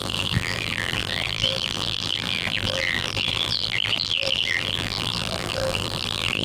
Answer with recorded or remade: remade